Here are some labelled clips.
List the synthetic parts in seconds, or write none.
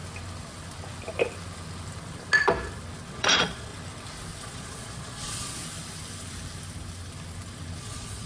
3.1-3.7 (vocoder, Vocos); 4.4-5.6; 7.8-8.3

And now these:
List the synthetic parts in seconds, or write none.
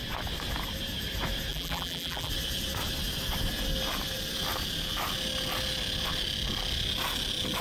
1.5-2.3 (vocoder, BigVGAN v2)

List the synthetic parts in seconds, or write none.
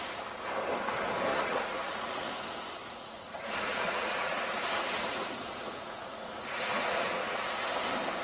1.3-2.4 (vocoder, Vocos); 2.8-7.7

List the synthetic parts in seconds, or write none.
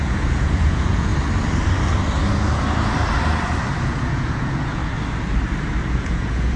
0.0-1.1 (vocoder, Vocos); 3.8-4.8; 5.9-6.6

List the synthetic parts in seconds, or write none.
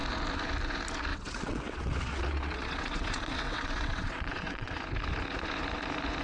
1.1-4.8 (vocoder, WaveNeXt)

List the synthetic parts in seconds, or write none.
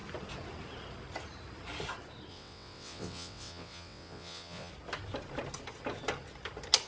2.3-4.7 (vocoder, WaveNeXt)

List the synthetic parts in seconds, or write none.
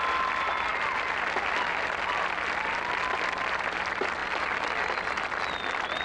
none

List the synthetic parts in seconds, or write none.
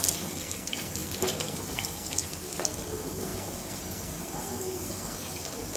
0.0-5.8 (codec, SNAC)